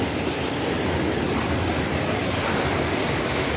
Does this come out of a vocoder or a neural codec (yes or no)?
no